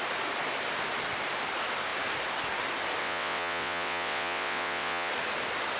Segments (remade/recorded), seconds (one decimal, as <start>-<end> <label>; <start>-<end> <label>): 0.0-3.0 recorded; 3.0-5.1 remade; 5.1-5.8 recorded